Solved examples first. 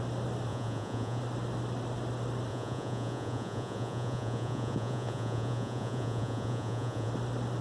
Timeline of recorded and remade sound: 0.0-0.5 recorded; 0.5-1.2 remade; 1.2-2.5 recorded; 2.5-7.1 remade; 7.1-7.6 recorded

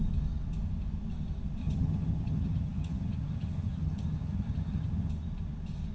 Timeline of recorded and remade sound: 0.0-1.6 recorded; 1.6-5.1 remade; 5.1-5.9 recorded

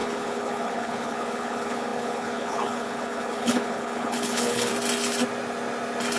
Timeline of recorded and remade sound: 0.0-4.7 remade; 4.7-6.2 recorded

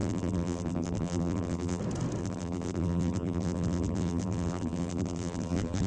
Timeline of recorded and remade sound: 0.0-1.8 remade; 1.8-2.2 recorded; 2.2-5.9 remade